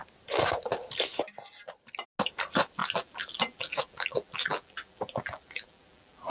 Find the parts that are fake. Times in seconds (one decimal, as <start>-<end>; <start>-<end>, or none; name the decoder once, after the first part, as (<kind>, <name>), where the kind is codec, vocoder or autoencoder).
2.8-6.3 (vocoder, BigVGAN v2)